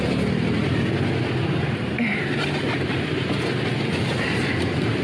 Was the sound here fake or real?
real